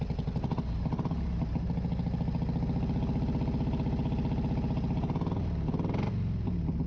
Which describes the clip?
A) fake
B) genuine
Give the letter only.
B